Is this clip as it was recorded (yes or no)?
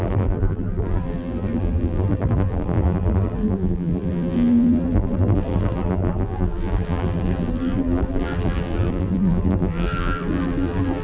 no